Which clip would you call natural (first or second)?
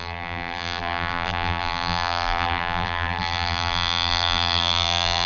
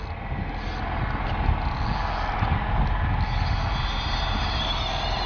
second